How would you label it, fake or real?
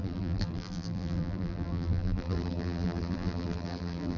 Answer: fake